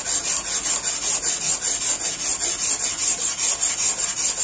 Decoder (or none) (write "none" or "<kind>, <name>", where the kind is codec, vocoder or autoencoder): none